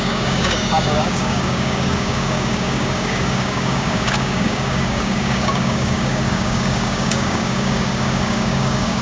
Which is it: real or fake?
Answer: fake